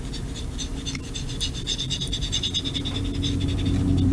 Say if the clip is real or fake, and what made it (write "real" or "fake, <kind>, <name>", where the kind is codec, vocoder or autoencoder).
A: real